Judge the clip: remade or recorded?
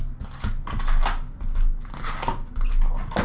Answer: recorded